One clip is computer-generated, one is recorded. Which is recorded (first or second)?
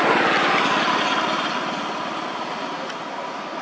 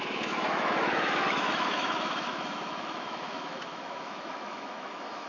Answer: first